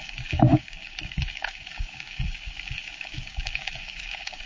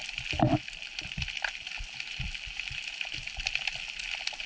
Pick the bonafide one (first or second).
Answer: second